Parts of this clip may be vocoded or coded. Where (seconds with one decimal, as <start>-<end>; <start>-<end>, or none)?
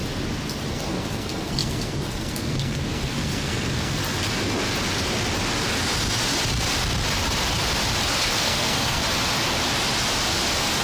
0.7-4.0; 8.3-9.0